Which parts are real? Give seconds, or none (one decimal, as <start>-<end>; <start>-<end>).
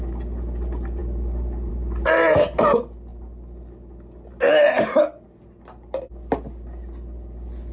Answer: 0.0-7.7